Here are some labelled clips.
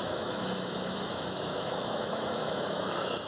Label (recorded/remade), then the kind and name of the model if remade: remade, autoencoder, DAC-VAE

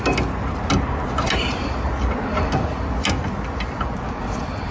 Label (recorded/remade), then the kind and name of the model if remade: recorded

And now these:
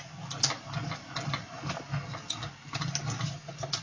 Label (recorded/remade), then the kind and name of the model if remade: recorded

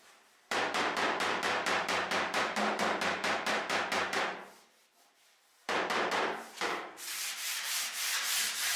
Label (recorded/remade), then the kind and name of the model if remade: remade, vocoder, BigVGAN v2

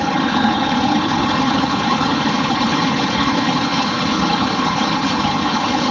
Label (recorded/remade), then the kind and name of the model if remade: remade, codec, HILCodec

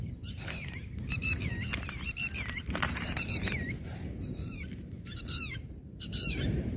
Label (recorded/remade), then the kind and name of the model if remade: remade, vocoder, BigVGAN v2